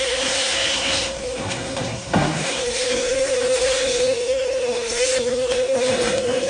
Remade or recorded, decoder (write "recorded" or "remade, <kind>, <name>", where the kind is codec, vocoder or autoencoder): remade, codec, SNAC